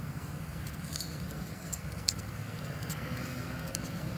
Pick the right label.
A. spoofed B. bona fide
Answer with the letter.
A